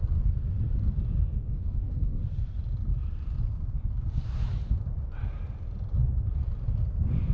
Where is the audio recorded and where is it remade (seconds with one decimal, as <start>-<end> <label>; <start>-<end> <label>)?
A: 0.0-1.3 recorded; 1.3-2.2 remade; 2.2-7.3 recorded